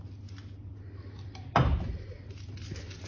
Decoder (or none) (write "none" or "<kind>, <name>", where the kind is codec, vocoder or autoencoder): none